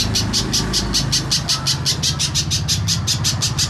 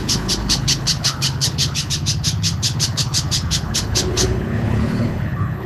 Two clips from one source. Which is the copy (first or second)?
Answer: second